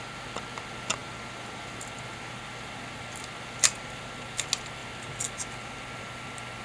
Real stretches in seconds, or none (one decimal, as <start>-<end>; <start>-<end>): 0.0-6.6